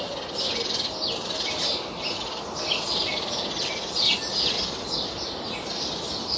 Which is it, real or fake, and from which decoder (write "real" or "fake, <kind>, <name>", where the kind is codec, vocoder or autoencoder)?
real